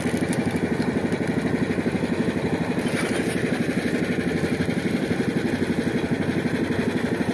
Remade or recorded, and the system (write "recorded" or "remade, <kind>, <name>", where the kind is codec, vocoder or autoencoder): remade, vocoder, BigVGAN v2